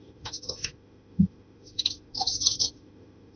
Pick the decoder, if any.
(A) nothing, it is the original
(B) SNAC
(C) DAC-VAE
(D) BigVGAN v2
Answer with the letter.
C